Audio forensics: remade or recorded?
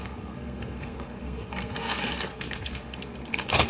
remade